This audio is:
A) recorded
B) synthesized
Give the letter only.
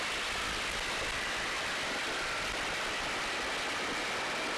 A